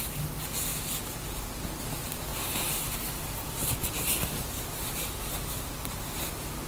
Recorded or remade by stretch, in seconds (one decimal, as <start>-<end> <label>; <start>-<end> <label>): 0.0-2.3 recorded; 2.3-6.2 remade; 6.2-6.7 recorded